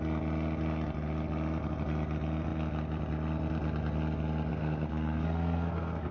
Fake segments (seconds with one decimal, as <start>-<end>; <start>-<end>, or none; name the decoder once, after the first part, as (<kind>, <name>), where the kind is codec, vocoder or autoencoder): 4.5-6.1 (codec, SNAC)